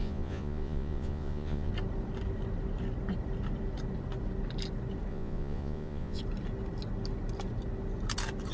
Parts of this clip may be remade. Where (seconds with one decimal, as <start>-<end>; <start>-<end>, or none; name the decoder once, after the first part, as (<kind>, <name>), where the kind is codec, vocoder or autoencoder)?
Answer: 0.0-1.7 (vocoder, Vocos); 5.1-6.2